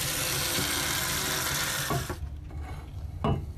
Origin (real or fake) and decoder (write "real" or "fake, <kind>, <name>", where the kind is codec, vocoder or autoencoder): real